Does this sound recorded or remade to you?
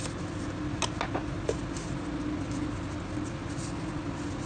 recorded